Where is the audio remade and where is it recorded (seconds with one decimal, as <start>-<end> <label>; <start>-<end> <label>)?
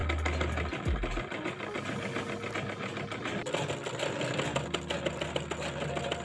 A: 0.0-6.2 recorded